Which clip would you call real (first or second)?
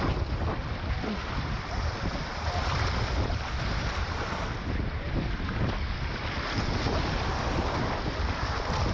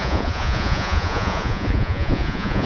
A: first